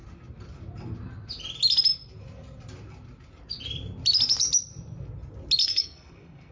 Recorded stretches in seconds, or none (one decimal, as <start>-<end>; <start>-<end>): 0.0-5.6